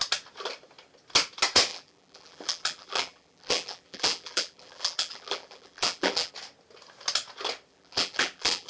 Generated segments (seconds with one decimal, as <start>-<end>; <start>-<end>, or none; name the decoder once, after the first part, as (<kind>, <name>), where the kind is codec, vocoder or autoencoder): 1.7-6.3 (vocoder, BigVGAN v2); 7.7-8.7